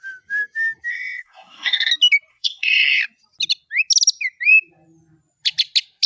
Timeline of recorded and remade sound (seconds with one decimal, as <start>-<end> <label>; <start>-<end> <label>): 0.0-0.9 recorded; 0.9-1.9 remade; 1.9-2.3 recorded; 2.3-3.0 remade; 3.0-6.1 recorded